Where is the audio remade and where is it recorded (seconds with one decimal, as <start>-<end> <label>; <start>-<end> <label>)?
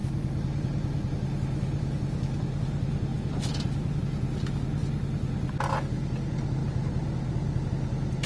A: 0.0-3.1 recorded; 3.1-4.0 remade; 4.0-6.6 recorded; 6.6-7.7 remade; 7.7-8.3 recorded